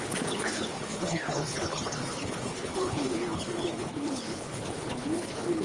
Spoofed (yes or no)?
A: yes